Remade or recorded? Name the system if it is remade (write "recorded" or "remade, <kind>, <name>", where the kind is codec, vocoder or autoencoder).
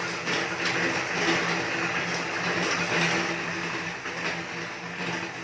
recorded